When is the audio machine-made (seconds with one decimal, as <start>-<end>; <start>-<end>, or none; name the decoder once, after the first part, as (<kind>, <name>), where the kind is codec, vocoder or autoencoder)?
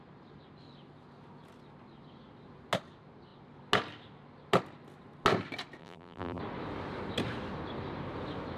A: 5.8-6.4 (vocoder, BigVGAN v2)